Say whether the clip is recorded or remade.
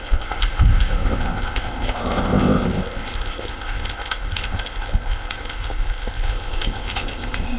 remade